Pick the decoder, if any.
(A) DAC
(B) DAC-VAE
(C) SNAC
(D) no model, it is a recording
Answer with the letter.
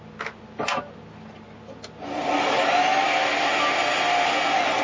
D